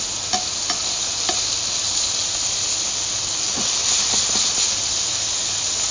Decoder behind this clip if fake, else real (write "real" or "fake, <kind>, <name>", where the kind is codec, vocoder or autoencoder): real